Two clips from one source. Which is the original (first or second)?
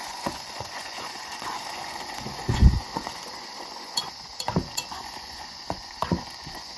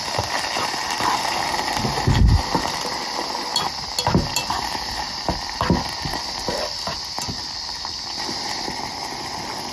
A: second